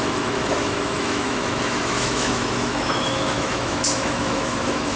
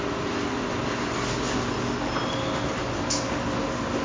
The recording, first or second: second